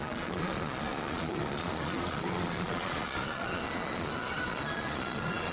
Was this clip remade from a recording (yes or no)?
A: yes